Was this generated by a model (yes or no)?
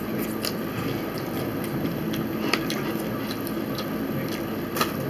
no